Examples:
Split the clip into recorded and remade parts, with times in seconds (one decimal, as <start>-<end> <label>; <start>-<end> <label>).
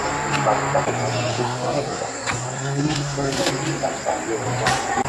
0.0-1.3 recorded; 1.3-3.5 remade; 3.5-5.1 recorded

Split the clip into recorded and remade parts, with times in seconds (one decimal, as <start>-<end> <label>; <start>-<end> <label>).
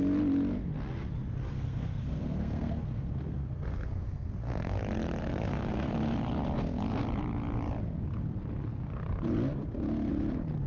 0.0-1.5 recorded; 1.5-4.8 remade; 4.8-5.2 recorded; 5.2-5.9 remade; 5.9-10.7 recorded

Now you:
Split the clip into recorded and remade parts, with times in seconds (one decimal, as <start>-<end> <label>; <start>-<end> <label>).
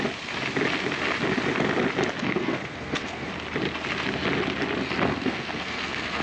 0.0-2.2 recorded; 2.2-3.3 remade; 3.3-5.1 recorded; 5.1-6.2 remade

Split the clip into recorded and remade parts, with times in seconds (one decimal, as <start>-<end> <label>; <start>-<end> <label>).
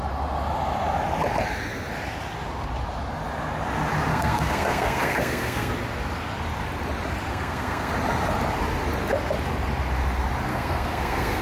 0.0-4.1 recorded; 4.1-5.7 remade; 5.7-7.3 recorded; 7.3-7.9 remade; 7.9-10.5 recorded; 10.5-11.4 remade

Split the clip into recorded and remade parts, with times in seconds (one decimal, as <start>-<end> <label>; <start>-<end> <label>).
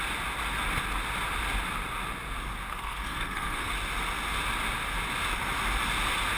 0.0-2.7 recorded; 2.7-3.7 remade; 3.7-6.4 recorded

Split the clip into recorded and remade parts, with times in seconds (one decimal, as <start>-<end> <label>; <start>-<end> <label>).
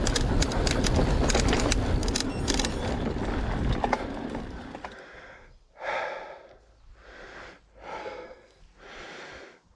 0.0-8.0 recorded; 8.0-8.6 remade; 8.6-9.8 recorded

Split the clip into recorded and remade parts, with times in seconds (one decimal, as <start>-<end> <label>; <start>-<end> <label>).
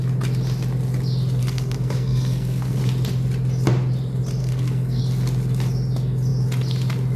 0.0-1.4 recorded; 1.4-2.8 remade; 2.8-4.4 recorded; 4.4-5.0 remade; 5.0-7.2 recorded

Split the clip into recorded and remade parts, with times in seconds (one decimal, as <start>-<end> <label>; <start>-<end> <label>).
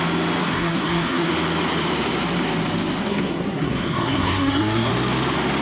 0.0-0.4 recorded; 0.4-1.3 remade; 1.3-3.0 recorded; 3.0-4.9 remade; 4.9-5.6 recorded